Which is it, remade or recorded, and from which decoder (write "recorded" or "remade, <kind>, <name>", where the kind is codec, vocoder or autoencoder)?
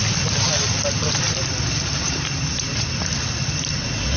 recorded